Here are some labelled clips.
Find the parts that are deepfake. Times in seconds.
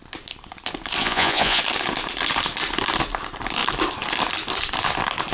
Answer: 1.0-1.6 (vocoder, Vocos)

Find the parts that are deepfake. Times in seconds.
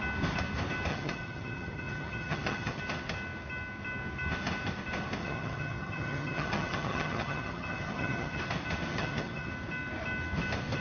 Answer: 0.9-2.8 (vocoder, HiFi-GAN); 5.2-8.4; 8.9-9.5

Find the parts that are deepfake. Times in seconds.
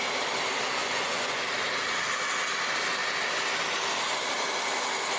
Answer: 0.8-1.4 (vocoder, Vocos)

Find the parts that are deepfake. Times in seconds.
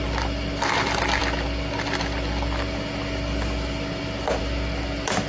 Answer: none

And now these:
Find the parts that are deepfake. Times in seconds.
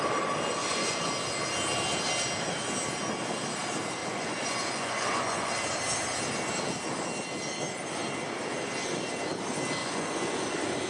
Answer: 0.6-1.1 (vocoder, Vocos); 4.0-5.5; 9.8-10.5